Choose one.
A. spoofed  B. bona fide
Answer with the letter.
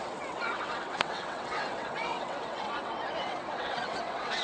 A